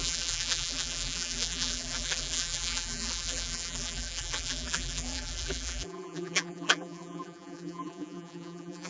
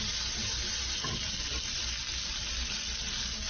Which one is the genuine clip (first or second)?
second